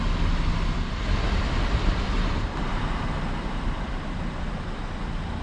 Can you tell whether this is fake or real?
fake